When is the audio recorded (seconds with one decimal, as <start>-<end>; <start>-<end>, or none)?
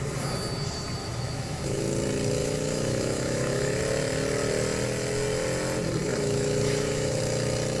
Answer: 0.0-1.0; 1.8-2.4; 3.8-6.1; 7.2-7.8